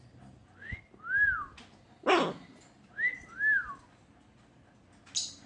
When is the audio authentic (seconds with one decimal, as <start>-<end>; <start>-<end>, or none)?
0.0-3.1; 3.7-5.5